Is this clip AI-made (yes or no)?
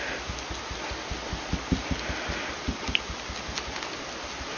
no